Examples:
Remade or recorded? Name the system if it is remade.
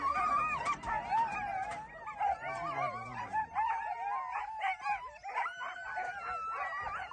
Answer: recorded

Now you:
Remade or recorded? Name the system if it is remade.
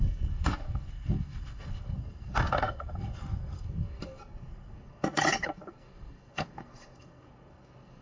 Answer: remade, codec, SNAC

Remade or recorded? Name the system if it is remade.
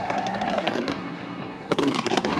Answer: remade, codec, SNAC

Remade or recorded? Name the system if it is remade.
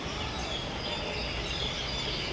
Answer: recorded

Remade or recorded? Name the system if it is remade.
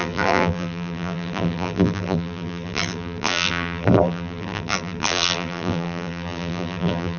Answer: remade, vocoder, BigVGAN v2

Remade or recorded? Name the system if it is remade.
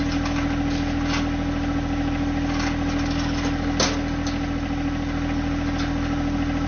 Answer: recorded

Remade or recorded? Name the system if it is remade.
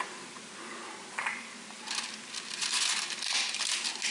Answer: recorded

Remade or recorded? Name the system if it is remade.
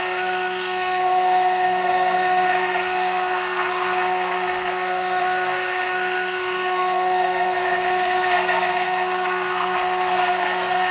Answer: remade, codec, SNAC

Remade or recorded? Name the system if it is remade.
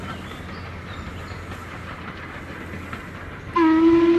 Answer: recorded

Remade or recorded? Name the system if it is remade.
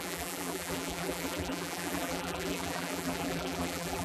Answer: remade, vocoder, BigVGAN v2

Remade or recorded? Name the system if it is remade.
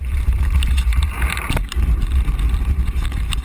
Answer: remade, vocoder, BigVGAN v2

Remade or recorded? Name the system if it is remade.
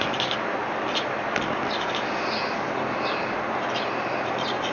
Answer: recorded